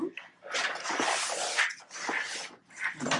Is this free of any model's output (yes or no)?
yes